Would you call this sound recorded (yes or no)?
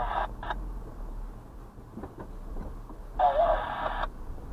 yes